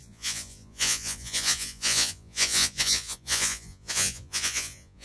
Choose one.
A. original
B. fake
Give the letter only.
B